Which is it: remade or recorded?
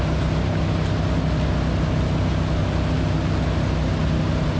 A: recorded